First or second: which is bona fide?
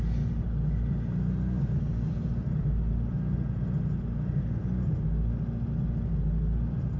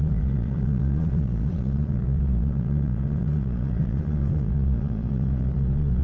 first